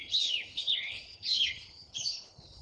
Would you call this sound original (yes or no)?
no